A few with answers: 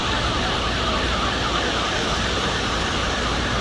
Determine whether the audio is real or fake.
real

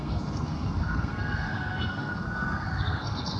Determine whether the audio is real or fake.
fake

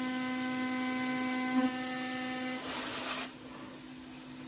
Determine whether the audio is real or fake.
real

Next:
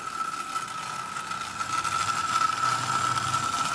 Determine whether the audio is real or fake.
real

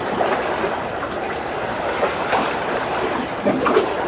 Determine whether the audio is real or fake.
real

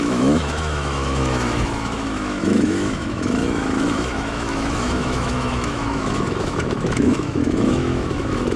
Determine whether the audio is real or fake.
fake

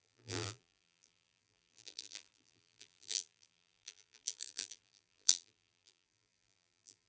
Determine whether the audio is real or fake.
fake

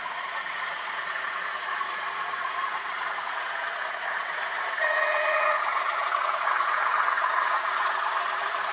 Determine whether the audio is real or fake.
fake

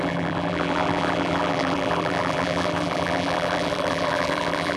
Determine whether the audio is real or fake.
fake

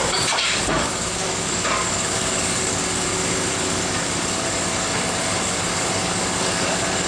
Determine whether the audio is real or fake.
fake